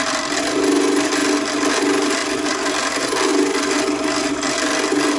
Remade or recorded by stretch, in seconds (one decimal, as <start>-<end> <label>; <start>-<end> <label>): 0.0-2.2 recorded; 2.2-2.9 remade; 2.9-5.2 recorded